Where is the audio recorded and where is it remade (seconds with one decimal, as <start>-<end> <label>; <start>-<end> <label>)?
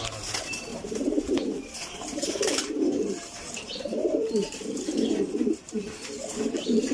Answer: 0.0-0.7 recorded; 0.7-4.8 remade; 4.8-5.6 recorded; 5.6-6.2 remade; 6.2-6.9 recorded